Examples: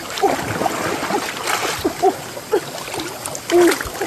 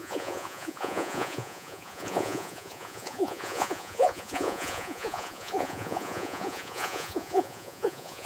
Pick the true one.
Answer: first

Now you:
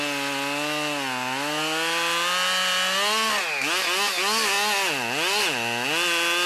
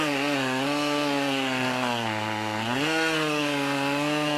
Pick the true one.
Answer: first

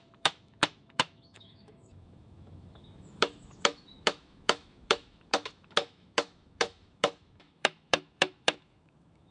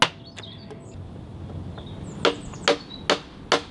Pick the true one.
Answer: second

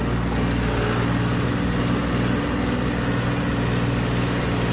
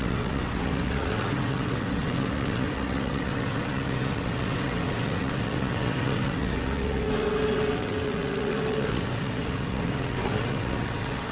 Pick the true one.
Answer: first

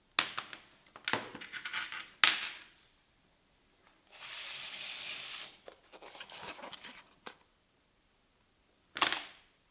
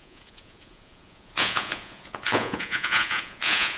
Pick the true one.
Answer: first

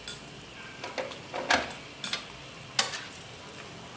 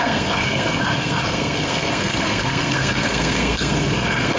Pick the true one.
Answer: first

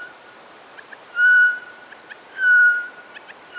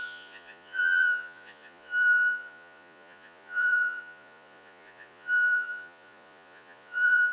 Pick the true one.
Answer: first